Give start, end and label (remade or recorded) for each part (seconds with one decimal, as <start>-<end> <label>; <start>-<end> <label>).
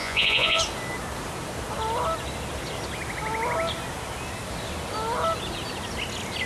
0.0-0.6 remade; 0.6-6.5 recorded